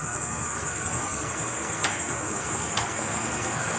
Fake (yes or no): yes